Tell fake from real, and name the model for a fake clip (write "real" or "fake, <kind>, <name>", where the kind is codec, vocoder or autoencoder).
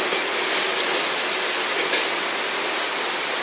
real